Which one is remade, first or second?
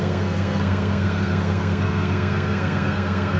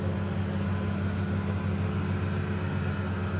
first